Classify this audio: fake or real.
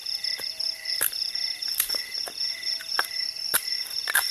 fake